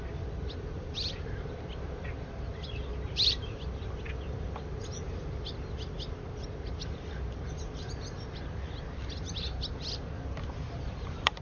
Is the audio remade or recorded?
remade